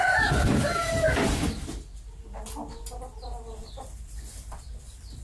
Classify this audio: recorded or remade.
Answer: recorded